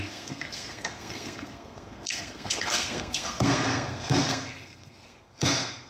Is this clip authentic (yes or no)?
no